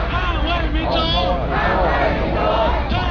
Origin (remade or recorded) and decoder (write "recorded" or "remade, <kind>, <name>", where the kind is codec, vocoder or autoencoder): recorded